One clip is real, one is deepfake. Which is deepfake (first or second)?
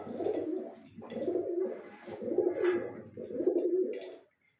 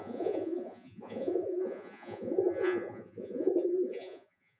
second